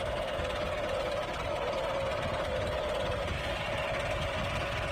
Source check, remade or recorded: recorded